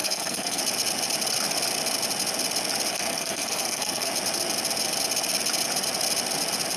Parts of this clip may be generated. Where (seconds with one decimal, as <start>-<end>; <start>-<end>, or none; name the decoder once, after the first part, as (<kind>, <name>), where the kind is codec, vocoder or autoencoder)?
0.0-0.6 (codec, SNAC); 2.9-4.1